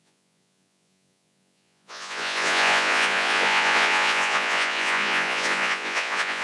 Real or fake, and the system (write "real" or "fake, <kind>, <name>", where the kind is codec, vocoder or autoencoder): fake, vocoder, Vocos